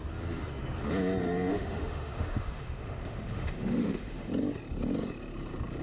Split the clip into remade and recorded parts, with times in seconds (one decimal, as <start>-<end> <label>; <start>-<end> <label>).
0.0-1.5 recorded; 1.5-4.3 remade; 4.3-5.8 recorded